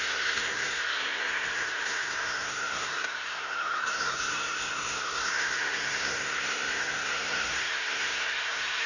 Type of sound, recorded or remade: remade